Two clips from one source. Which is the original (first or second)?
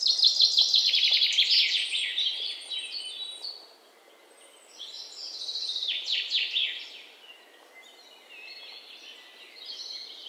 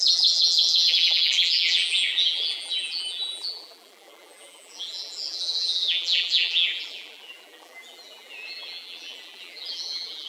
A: first